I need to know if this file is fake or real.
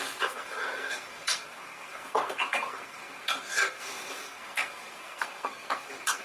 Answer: fake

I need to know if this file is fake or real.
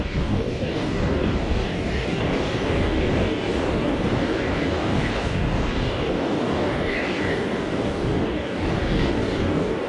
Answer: fake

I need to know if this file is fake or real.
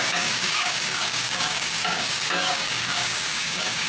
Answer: fake